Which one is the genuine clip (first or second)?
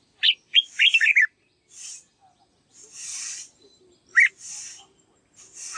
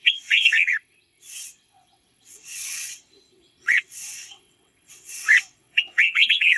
first